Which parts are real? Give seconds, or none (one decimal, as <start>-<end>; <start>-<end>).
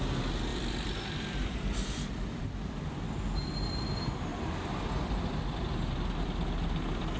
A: 0.0-0.5; 2.9-4.3